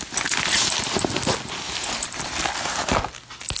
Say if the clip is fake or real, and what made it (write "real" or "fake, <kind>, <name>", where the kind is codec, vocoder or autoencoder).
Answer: real